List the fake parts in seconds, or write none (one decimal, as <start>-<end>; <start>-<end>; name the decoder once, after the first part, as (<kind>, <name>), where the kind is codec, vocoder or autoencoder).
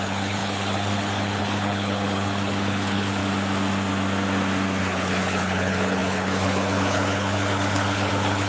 0.0-3.2 (codec, HILCodec); 4.8-8.5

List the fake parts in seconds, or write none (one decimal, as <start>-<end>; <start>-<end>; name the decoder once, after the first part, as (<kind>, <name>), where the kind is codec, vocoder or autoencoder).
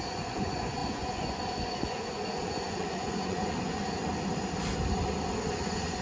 0.0-3.8 (vocoder, Vocos); 5.4-6.0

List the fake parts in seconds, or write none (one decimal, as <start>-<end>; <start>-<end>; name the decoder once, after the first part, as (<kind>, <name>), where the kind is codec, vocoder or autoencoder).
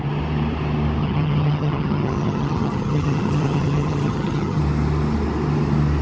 1.0-4.6 (vocoder, HiFi-GAN)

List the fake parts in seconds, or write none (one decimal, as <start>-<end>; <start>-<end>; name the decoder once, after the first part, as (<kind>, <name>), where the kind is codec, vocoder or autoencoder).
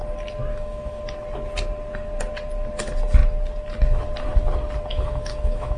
0.5-1.0 (autoencoder, DAC-VAE); 4.9-5.8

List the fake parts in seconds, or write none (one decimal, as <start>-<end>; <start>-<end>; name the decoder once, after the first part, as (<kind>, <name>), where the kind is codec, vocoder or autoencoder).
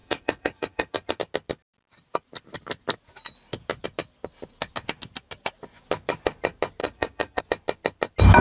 0.0-1.2 (vocoder, Vocos); 6.8-7.4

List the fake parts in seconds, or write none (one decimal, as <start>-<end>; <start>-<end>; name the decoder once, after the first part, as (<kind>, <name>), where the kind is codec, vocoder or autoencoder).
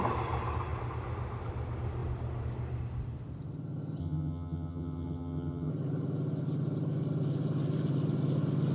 4.0-5.7 (vocoder, HiFi-GAN)